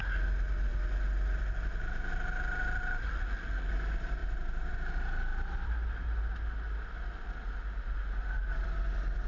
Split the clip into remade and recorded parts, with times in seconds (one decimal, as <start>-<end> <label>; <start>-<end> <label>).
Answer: 0.0-9.3 recorded